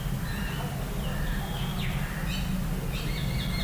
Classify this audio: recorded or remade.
recorded